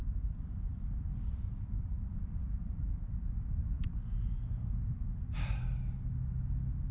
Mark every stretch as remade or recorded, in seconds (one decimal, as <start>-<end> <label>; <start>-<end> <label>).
0.0-6.9 recorded